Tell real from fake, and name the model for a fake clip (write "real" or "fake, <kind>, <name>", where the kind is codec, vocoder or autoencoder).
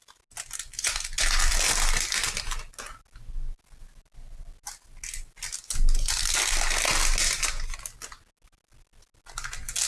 real